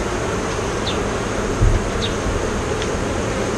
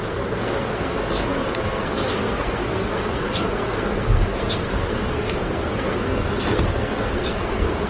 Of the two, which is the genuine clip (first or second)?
first